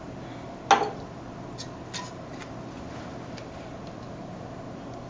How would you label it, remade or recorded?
recorded